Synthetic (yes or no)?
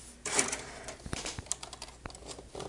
no